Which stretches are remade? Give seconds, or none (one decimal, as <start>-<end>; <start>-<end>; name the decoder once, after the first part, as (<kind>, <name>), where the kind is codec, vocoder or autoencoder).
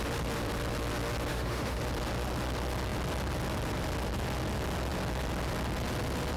1.3-1.8 (autoencoder, DAC-VAE)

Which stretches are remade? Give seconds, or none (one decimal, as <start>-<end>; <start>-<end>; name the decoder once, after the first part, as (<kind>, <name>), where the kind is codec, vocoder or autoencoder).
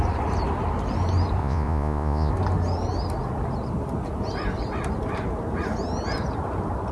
1.4-2.3 (vocoder, Vocos)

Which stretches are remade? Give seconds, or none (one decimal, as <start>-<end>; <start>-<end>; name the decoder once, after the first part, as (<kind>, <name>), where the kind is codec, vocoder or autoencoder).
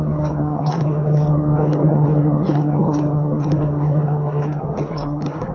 0.0-5.5 (codec, SNAC)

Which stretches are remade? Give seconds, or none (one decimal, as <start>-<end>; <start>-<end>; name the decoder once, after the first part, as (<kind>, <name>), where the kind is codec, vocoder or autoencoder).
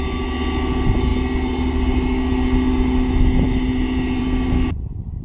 none